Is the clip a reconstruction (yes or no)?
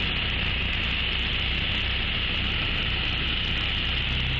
no